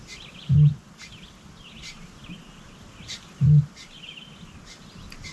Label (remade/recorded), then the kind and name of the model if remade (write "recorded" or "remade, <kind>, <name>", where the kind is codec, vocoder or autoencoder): recorded